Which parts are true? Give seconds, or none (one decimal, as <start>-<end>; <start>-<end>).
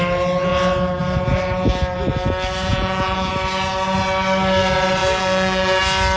0.0-2.7; 3.3-5.0; 5.8-6.2